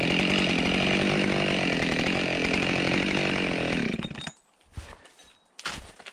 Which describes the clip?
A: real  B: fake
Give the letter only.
A